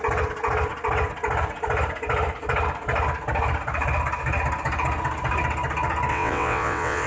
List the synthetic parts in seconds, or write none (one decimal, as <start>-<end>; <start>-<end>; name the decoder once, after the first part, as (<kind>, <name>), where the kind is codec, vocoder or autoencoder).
6.1-7.1 (vocoder, WaveNeXt)